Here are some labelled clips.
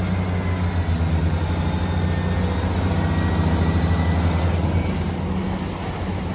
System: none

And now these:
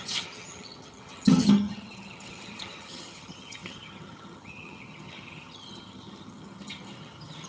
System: vocoder, HiFi-GAN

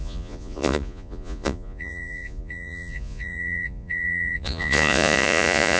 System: vocoder, Vocos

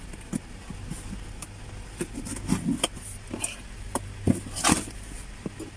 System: none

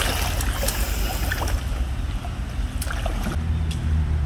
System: none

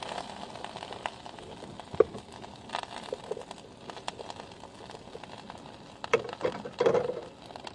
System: none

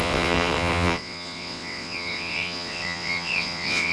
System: vocoder, WaveNeXt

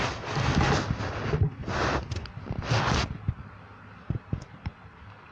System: none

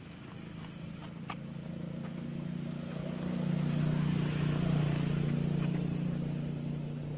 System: none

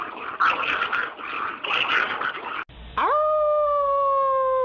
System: none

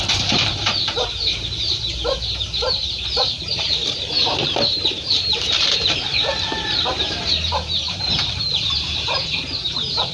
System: vocoder, BigVGAN v2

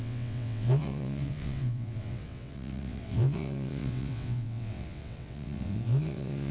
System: vocoder, WaveNeXt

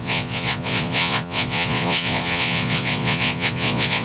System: vocoder, Vocos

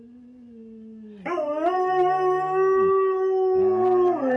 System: none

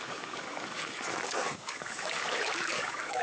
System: codec, DAC